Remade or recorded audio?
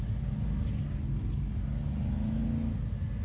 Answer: recorded